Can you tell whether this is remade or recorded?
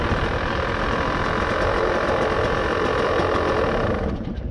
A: remade